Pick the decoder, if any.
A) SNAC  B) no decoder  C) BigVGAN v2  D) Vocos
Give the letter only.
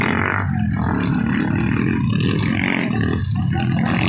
B